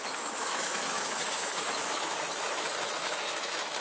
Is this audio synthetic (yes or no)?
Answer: yes